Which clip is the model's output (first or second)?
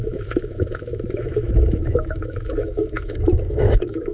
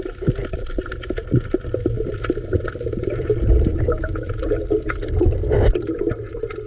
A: first